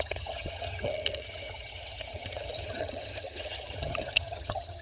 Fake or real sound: fake